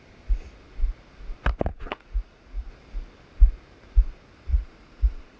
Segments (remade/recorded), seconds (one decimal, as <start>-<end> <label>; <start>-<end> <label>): 0.0-1.7 recorded; 1.7-2.7 remade; 2.7-4.5 recorded; 4.5-5.4 remade